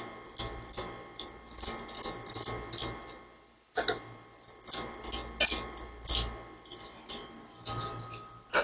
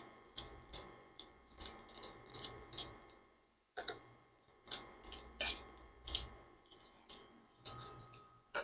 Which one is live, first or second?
first